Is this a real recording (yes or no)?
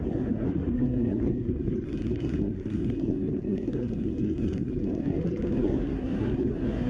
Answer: no